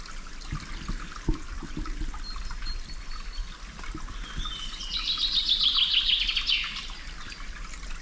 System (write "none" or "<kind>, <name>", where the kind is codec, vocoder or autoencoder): none